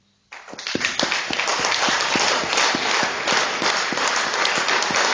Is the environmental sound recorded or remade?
recorded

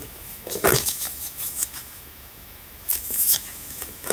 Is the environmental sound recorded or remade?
remade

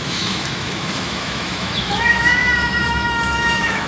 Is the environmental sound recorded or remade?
remade